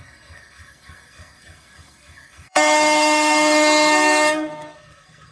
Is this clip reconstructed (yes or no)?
yes